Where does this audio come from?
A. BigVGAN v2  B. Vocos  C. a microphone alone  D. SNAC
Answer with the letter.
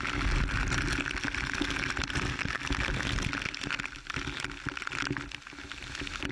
C